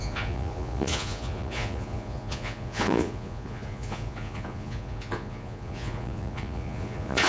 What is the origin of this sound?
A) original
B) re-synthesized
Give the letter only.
B